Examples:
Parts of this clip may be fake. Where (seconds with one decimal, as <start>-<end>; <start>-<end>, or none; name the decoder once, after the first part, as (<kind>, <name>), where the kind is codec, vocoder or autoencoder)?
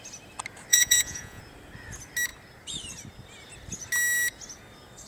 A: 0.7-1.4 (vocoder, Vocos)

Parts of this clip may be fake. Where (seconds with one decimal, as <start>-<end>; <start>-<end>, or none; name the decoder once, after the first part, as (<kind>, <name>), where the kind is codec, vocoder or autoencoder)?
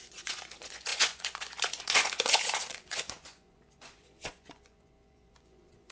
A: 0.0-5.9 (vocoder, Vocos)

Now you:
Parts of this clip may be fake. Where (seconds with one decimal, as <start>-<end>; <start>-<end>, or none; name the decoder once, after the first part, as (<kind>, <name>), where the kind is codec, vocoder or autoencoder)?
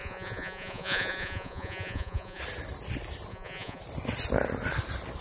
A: 0.0-2.4 (vocoder, Vocos); 3.3-3.8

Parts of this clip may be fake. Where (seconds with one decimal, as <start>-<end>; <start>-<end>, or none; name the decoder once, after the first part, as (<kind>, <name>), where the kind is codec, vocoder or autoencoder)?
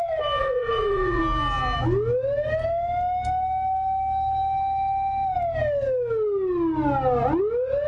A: 0.4-1.2 (vocoder, Vocos)